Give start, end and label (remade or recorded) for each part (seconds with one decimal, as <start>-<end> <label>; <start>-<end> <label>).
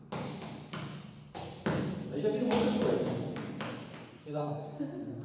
0.0-4.1 recorded; 4.1-4.8 remade; 4.8-5.2 recorded